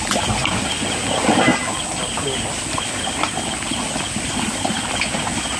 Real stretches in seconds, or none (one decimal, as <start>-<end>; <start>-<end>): 0.0-5.6